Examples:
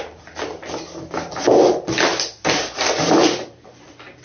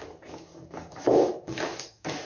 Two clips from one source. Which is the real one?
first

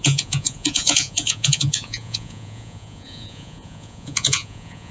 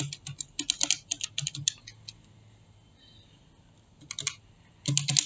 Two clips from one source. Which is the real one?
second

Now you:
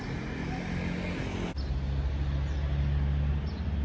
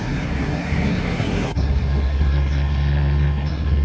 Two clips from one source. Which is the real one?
first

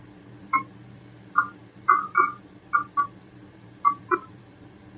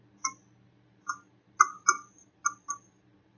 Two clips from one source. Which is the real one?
second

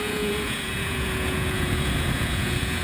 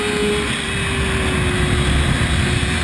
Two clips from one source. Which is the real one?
second